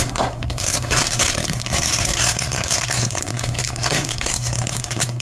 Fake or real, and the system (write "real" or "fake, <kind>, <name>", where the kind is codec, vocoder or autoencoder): fake, codec, SNAC